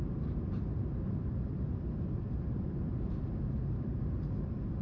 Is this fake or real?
fake